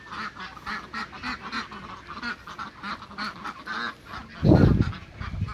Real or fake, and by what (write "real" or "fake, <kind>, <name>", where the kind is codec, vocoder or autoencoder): real